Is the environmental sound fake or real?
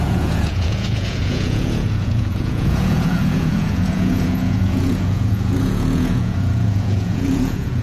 fake